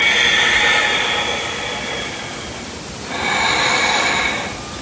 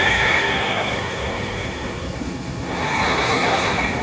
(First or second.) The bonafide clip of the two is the first